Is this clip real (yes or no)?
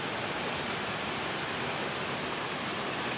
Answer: yes